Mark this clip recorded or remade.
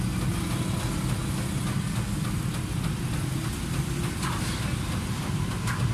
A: recorded